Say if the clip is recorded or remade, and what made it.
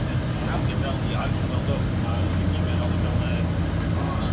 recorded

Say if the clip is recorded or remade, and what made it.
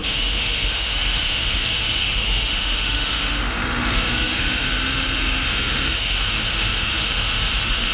remade, autoencoder, DAC-VAE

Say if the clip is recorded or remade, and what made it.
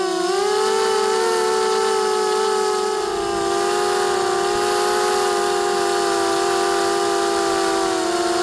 recorded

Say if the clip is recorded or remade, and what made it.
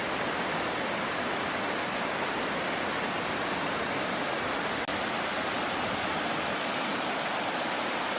recorded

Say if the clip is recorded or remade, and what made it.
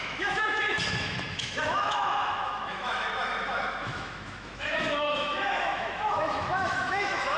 remade, autoencoder, DAC-VAE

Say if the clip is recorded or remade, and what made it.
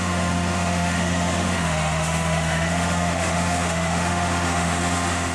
remade, autoencoder, DAC-VAE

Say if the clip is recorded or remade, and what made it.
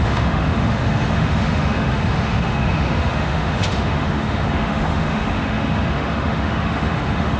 remade, autoencoder, DAC-VAE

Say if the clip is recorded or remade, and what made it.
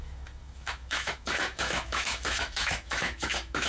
remade, autoencoder, DAC-VAE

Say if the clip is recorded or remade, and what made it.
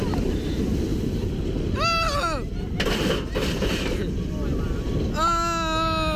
recorded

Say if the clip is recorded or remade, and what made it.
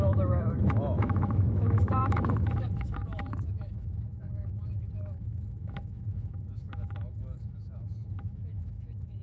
remade, autoencoder, DAC-VAE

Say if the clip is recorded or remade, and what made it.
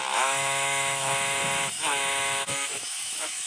remade, autoencoder, DAC-VAE